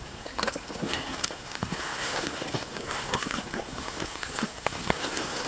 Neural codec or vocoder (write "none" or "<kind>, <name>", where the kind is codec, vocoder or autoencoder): codec, SNAC